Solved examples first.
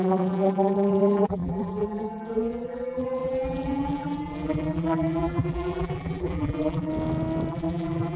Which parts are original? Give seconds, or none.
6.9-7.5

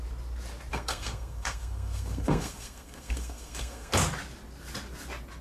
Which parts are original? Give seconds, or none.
0.0-0.7; 3.9-5.4